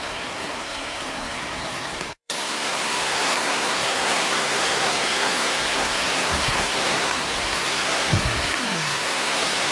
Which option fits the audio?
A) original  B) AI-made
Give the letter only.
B